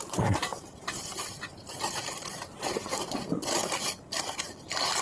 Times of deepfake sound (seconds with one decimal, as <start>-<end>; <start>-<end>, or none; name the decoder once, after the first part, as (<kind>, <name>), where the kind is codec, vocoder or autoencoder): 0.5-3.3 (vocoder, BigVGAN v2)